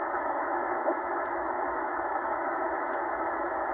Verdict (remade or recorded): remade